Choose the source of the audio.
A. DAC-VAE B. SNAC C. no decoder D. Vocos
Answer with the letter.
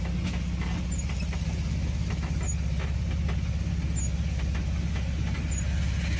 C